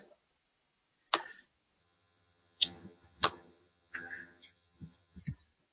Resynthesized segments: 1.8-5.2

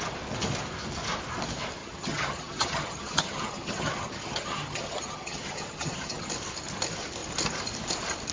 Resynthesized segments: 1.8-6.3

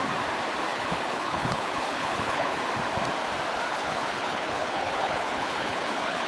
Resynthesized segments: 0.7-2.6; 3.7-6.3

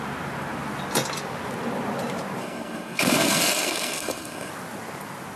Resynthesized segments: 2.4-4.5

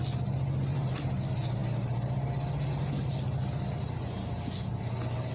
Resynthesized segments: 0.7-1.2